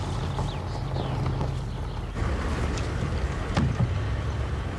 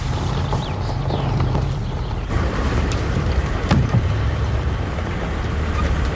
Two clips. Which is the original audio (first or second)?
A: first